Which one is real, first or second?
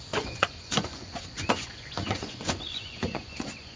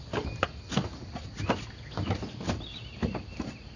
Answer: second